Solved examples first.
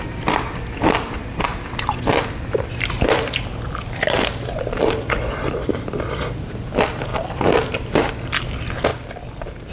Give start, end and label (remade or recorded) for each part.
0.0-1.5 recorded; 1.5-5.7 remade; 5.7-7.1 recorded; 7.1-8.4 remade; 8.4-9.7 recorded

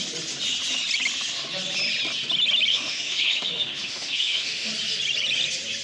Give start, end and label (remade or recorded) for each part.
0.0-2.7 recorded; 2.7-4.7 remade; 4.7-5.8 recorded

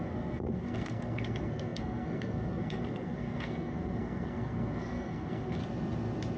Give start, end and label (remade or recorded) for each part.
0.0-5.6 remade; 5.6-6.4 recorded

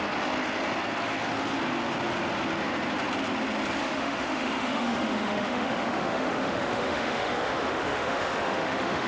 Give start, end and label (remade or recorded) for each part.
0.0-3.8 recorded; 3.8-9.1 remade

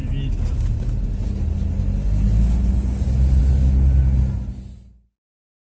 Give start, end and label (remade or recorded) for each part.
0.0-5.7 recorded

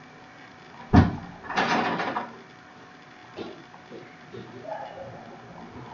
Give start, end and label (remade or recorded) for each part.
0.0-3.2 recorded; 3.2-5.4 remade; 5.4-5.9 recorded

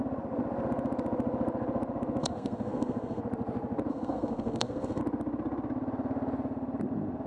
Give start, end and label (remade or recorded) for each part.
0.0-2.2 recorded; 2.2-3.2 remade; 3.2-3.9 recorded; 3.9-5.0 remade; 5.0-7.3 recorded